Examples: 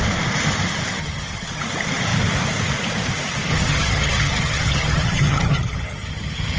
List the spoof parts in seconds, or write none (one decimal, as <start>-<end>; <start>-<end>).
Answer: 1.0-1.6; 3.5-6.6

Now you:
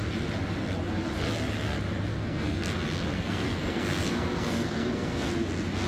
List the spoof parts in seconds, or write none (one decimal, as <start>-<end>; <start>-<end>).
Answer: 2.1-2.7; 3.1-5.3

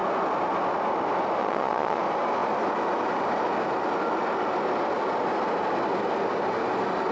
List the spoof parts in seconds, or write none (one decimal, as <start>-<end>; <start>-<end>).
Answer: 1.4-2.0